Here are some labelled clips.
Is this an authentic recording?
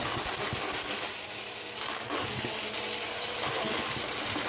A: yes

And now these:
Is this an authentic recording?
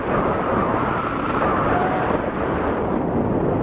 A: no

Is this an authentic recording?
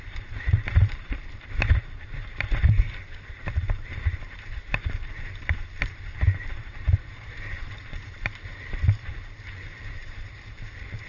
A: no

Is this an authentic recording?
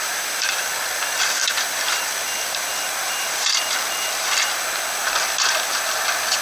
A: no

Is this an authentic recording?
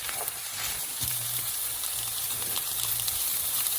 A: no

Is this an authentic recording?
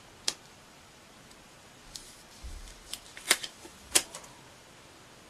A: no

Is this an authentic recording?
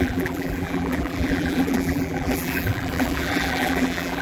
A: no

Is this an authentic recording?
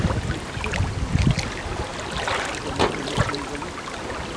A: yes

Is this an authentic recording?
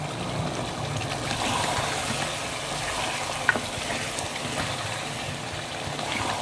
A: no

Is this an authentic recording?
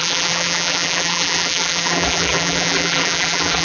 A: no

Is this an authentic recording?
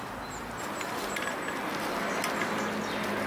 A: yes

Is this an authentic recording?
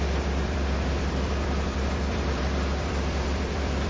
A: no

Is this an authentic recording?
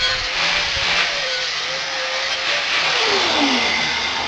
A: no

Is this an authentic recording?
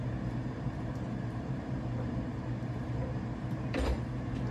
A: no